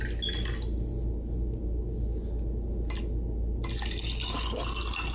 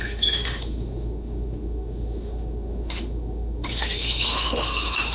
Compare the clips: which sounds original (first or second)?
first